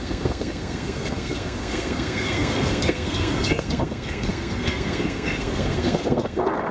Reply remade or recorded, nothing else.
remade